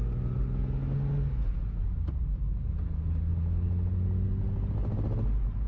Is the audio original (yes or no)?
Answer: yes